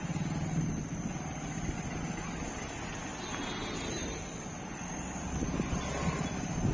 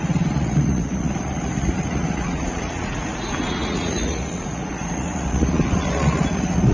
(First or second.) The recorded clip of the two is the first